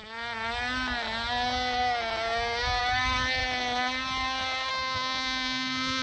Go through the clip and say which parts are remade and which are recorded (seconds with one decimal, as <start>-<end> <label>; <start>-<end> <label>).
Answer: 0.0-2.8 recorded; 2.8-3.4 remade; 3.4-4.7 recorded; 4.7-6.0 remade